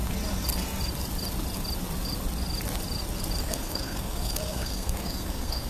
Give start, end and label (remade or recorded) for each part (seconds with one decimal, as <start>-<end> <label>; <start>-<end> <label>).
0.0-3.4 recorded; 3.4-5.7 remade